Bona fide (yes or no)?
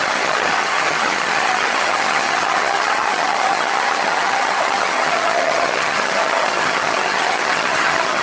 no